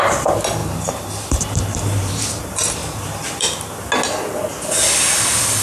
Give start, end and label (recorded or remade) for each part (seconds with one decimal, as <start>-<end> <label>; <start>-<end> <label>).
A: 0.0-0.6 recorded; 0.6-2.4 remade; 2.4-2.8 recorded; 2.8-3.8 remade; 3.8-5.6 recorded